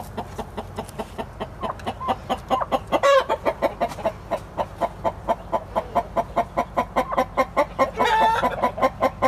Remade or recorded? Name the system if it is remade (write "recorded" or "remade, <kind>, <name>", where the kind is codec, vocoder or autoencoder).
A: recorded